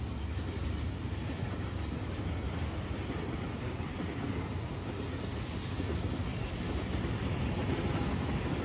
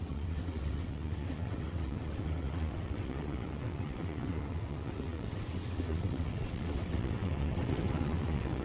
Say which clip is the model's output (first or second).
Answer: second